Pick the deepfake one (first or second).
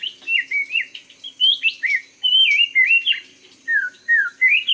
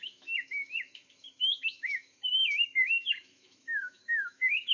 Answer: second